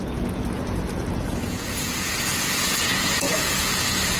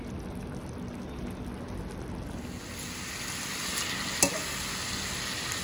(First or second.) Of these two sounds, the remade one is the first